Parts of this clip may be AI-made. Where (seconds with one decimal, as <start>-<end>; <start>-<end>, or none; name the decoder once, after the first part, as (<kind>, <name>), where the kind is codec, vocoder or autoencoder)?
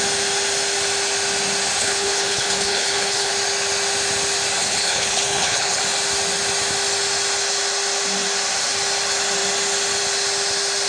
1.8-3.3 (codec, HILCodec); 4.6-5.8